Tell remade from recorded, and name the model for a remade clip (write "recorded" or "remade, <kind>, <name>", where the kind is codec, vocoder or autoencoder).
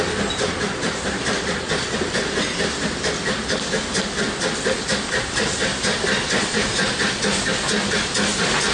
recorded